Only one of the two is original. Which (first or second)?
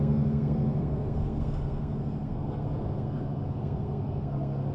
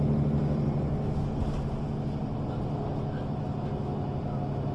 second